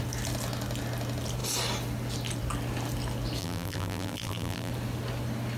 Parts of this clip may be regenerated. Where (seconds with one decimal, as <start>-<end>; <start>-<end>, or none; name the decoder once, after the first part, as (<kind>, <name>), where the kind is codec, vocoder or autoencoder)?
3.4-4.7 (vocoder, BigVGAN v2)